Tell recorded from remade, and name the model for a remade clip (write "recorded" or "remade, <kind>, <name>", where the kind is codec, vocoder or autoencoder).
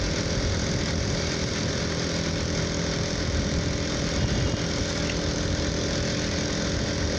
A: recorded